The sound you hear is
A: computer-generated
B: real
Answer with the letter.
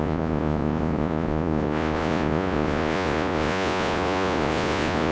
A